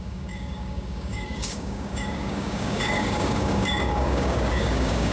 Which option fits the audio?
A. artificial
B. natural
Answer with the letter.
A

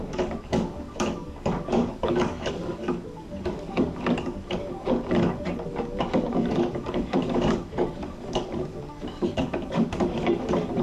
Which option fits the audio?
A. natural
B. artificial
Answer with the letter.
B